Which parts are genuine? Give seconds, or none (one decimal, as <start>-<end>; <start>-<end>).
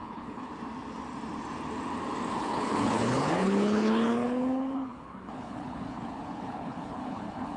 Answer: 0.5-2.3